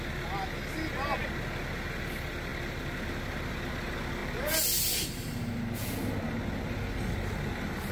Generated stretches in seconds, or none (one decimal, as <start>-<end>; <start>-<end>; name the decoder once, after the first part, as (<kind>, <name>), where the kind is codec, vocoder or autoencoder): none